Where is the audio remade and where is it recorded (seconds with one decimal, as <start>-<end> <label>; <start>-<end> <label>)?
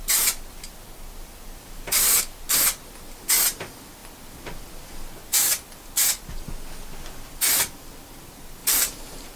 0.0-8.6 recorded; 8.6-9.4 remade